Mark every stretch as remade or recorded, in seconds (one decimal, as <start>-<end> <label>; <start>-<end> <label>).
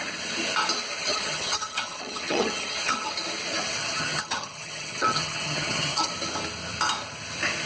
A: 0.0-1.0 recorded; 1.0-3.1 remade; 3.1-3.8 recorded; 3.8-6.1 remade; 6.1-7.7 recorded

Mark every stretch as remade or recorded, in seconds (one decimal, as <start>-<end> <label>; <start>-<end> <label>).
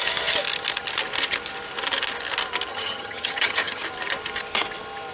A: 0.0-2.7 recorded; 2.7-3.8 remade; 3.8-5.1 recorded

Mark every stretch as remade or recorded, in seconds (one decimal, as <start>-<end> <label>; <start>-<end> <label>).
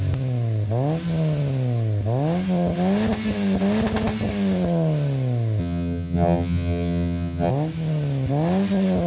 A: 0.0-5.6 recorded; 5.6-7.5 remade; 7.5-9.1 recorded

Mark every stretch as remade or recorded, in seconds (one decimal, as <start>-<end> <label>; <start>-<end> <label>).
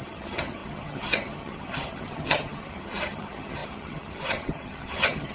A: 0.0-5.3 remade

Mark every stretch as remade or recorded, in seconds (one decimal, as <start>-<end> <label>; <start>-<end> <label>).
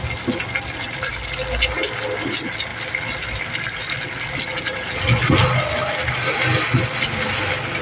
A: 0.0-7.8 recorded